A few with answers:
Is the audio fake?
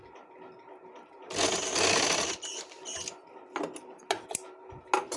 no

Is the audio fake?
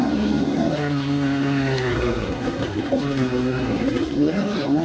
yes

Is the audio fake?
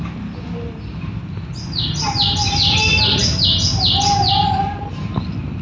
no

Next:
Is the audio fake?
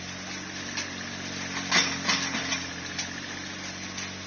no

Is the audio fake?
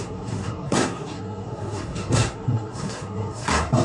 yes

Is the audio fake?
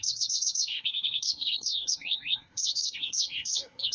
yes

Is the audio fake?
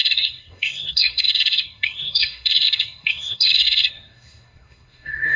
yes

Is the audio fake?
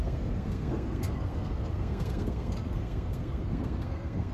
yes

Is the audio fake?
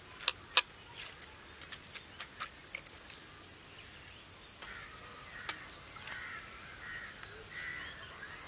no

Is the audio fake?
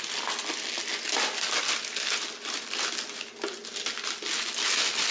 no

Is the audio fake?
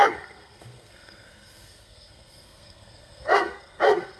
yes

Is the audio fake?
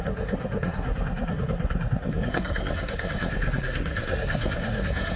yes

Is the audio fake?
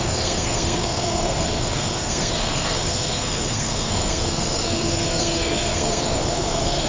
yes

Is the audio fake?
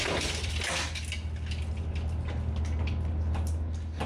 no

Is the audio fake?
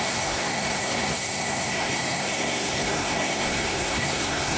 yes